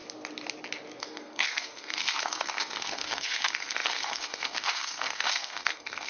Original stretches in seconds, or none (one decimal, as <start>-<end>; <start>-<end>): 0.0-1.0

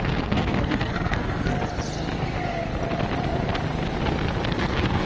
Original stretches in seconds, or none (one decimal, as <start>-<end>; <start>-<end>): 1.5-4.6